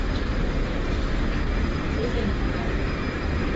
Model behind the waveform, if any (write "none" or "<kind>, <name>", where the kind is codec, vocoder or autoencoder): vocoder, BigVGAN v2